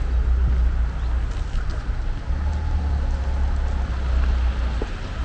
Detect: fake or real real